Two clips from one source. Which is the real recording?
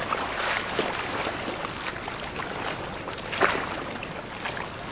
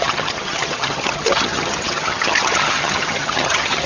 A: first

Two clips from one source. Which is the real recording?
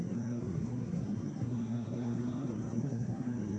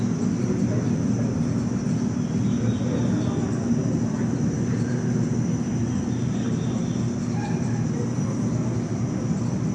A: second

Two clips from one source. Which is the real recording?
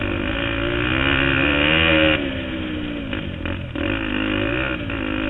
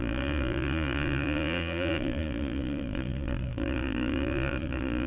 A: first